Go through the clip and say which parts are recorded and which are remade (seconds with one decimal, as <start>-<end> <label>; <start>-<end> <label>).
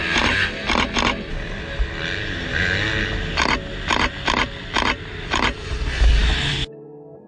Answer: 0.0-0.6 remade; 0.6-5.0 recorded; 5.0-7.3 remade